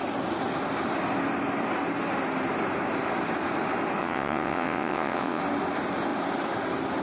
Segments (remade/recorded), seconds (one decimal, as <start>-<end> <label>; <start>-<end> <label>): 0.0-4.0 recorded; 4.0-5.4 remade; 5.4-7.0 recorded